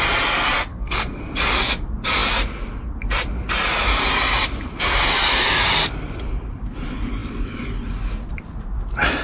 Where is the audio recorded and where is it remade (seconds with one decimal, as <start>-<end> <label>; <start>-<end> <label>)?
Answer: 0.0-0.7 recorded; 0.7-1.2 remade; 1.2-9.2 recorded